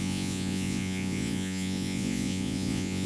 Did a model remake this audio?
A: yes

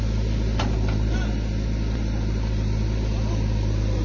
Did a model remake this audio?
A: no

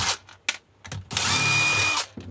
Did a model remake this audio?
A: no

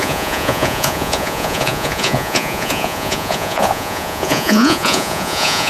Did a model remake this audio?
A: yes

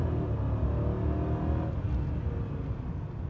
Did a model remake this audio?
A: no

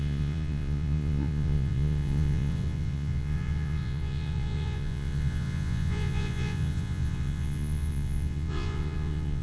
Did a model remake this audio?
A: yes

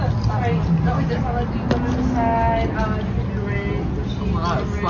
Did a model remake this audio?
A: no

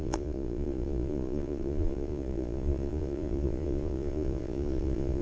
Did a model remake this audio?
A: yes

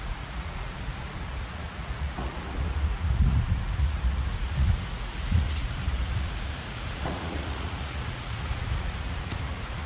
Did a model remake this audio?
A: yes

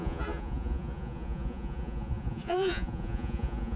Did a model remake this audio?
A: yes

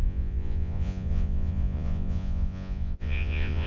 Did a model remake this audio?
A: yes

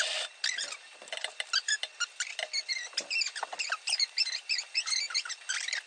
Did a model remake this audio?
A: no